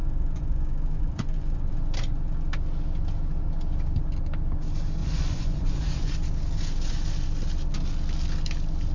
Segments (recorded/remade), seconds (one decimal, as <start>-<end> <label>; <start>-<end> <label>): 0.0-1.7 remade; 1.7-5.0 recorded; 5.0-6.1 remade; 6.1-8.9 recorded